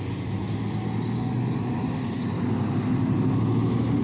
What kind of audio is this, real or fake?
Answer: real